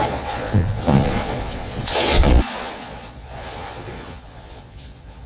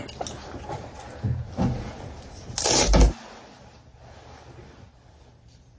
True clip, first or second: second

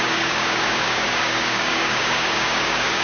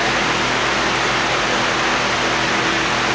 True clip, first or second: second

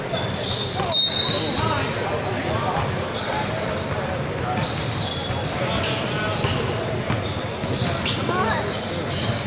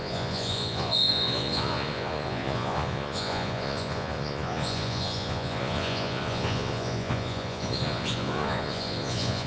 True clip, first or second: first